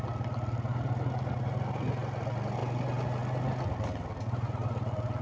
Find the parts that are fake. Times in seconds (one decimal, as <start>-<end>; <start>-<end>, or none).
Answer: none